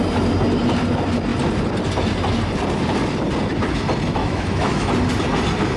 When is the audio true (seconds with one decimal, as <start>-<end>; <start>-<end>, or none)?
0.0-4.2; 4.9-5.8